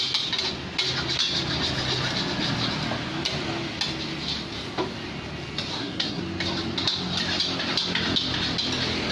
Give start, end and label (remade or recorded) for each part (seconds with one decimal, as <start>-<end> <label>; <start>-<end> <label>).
0.0-5.7 recorded; 5.7-6.2 remade; 6.2-9.1 recorded